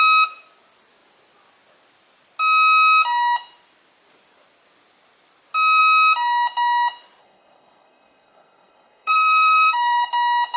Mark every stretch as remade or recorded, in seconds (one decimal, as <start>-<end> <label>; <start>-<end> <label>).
0.0-7.2 recorded; 7.2-10.1 remade; 10.1-10.6 recorded